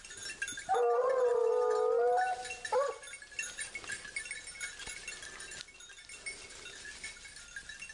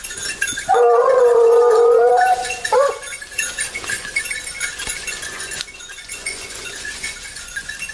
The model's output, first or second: second